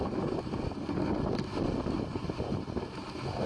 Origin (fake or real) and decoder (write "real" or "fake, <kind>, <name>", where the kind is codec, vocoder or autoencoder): real